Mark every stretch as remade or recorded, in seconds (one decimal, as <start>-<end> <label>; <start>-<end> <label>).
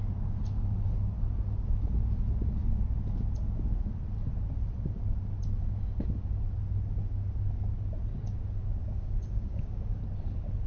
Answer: 0.0-8.8 recorded; 8.8-10.0 remade; 10.0-10.7 recorded